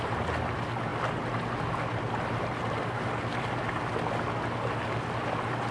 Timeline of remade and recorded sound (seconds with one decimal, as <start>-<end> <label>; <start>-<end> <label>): 0.0-5.7 recorded